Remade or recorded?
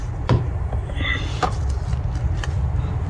remade